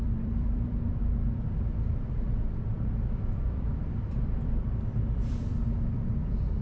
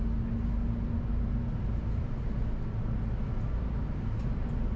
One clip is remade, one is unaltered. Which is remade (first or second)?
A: first